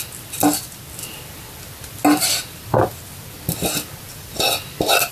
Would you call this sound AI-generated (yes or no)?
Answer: no